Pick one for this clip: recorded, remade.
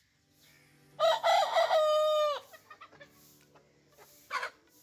recorded